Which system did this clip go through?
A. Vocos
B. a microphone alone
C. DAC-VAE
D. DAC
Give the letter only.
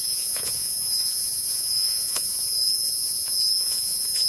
A